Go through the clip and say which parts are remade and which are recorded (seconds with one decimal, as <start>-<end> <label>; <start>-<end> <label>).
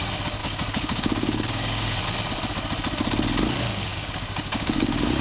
0.0-0.4 recorded; 0.4-2.0 remade; 2.0-3.9 recorded; 3.9-5.2 remade